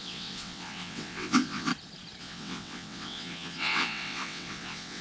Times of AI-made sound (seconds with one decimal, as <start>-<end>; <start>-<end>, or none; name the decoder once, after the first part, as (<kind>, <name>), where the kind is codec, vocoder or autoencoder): 0.0-1.7 (vocoder, WaveNeXt); 2.2-5.0